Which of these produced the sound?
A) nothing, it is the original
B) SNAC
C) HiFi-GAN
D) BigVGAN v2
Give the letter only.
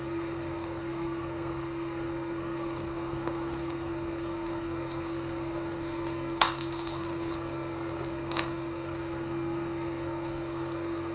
B